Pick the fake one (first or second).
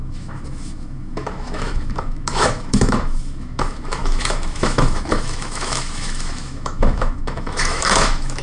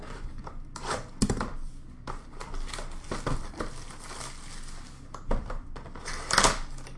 first